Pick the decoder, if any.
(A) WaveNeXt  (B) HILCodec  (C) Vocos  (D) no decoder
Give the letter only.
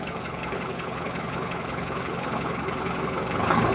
B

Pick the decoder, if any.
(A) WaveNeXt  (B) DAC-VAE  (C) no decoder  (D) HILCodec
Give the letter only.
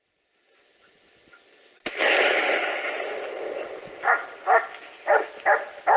C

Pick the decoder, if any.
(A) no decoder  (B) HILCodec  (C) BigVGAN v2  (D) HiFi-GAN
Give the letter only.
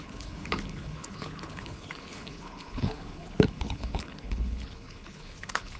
B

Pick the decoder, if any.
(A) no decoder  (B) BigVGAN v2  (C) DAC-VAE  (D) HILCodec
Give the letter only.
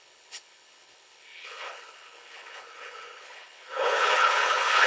D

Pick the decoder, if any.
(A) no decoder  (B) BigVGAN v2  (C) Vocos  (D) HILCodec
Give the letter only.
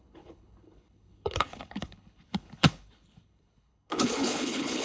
D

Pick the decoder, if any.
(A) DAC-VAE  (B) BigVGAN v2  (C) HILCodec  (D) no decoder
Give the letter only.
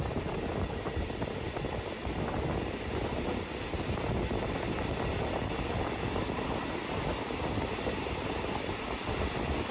D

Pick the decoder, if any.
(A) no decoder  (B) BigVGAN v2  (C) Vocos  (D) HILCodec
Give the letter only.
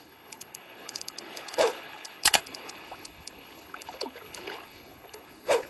D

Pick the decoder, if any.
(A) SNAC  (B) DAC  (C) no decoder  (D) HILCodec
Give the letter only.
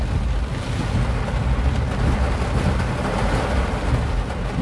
C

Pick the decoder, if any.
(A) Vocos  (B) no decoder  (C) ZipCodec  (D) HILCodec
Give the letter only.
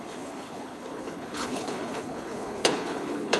D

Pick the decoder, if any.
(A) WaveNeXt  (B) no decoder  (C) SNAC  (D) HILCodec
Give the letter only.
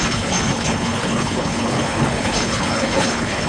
D